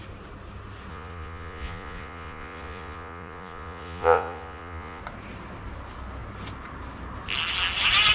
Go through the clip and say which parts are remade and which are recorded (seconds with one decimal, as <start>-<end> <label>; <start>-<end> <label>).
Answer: 0.0-0.9 recorded; 0.9-5.0 remade; 5.0-8.1 recorded